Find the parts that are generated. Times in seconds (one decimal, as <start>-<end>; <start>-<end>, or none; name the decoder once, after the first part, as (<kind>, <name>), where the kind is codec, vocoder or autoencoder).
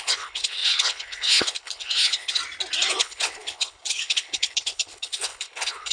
0.0-2.4 (codec, HILCodec); 3.0-5.9